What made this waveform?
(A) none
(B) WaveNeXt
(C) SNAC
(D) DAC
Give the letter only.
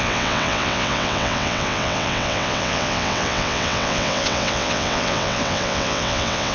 B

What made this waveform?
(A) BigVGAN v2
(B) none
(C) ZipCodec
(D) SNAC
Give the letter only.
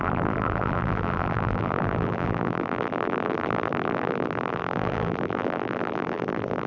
A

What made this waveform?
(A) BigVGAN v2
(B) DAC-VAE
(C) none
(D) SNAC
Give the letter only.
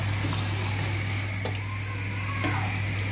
C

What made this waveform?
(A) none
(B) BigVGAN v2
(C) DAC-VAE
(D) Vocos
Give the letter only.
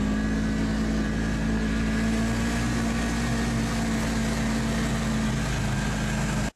A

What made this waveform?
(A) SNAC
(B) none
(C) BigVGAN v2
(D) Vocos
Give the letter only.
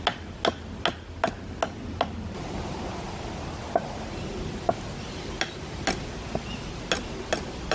B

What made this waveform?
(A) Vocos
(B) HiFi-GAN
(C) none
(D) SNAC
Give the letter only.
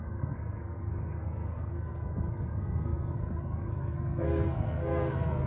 D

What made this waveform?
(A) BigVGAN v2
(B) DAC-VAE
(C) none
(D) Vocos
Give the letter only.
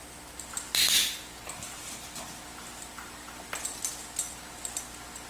C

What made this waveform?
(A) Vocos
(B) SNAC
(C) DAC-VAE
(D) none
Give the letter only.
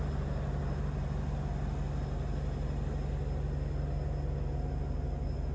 D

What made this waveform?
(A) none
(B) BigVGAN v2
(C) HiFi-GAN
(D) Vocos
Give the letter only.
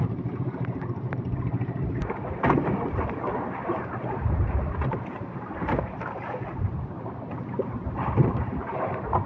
B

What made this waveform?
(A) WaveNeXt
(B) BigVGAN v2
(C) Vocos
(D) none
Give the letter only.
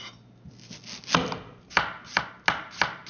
D